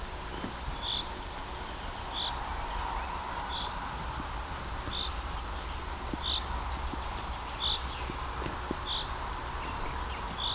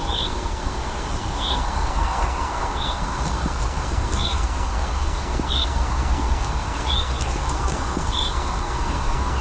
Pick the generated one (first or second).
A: second